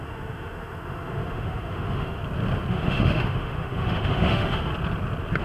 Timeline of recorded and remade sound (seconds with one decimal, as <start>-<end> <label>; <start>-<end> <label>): 0.0-2.2 remade; 2.2-2.7 recorded; 2.7-4.7 remade; 4.7-5.4 recorded